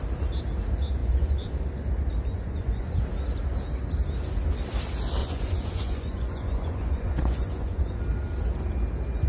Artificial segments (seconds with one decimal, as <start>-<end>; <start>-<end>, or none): 1.0-1.5; 2.3-3.0; 5.2-8.0

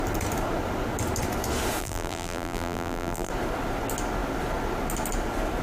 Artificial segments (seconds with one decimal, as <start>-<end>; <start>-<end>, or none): 1.8-3.3

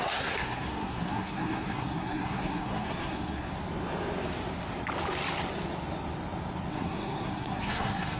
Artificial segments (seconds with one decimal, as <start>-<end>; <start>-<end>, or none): 0.0-3.5; 6.7-8.2